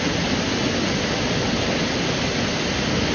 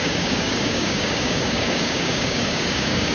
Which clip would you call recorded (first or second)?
first